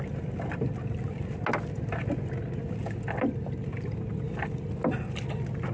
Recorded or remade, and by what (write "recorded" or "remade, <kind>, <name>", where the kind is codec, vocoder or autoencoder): recorded